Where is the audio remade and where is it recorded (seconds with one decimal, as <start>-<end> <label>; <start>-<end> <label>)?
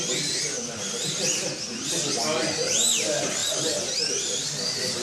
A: 0.0-5.0 recorded